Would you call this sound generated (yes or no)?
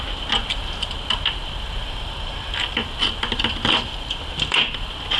yes